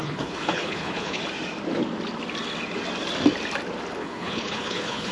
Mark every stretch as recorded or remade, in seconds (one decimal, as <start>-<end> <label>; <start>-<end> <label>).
0.0-1.2 remade; 1.2-4.0 recorded; 4.0-5.1 remade